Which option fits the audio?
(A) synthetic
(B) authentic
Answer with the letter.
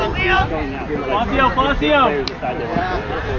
B